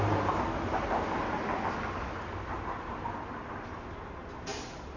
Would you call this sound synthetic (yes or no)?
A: no